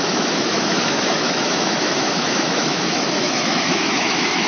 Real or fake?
fake